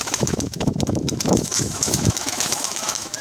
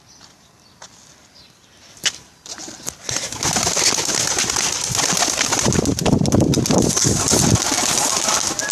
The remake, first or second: first